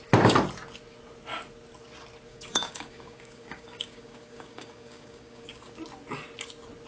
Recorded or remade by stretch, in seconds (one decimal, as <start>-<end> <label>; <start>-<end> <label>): 0.0-2.3 recorded; 2.3-5.7 remade; 5.7-6.9 recorded